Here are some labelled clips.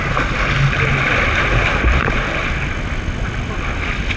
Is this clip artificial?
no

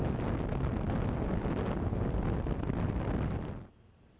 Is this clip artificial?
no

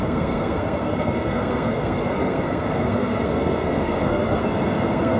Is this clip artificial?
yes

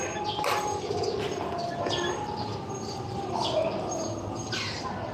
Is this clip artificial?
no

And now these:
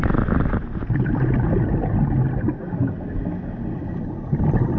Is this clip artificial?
no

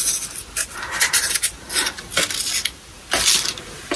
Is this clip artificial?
no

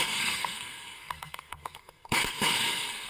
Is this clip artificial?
yes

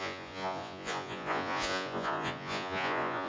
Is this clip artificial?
yes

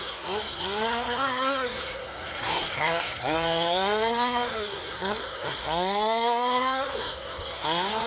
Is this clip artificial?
yes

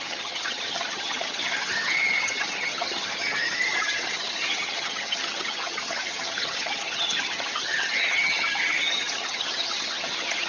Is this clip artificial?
yes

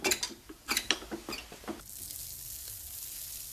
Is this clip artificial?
no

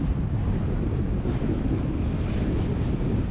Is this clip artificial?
no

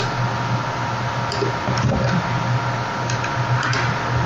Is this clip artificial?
no